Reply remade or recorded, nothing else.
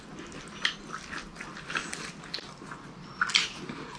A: recorded